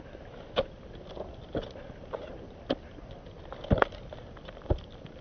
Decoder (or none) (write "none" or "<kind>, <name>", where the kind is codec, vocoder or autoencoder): none